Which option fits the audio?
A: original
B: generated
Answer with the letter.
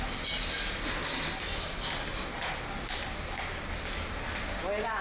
A